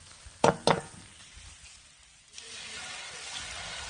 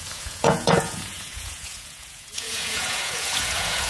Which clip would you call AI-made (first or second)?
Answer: second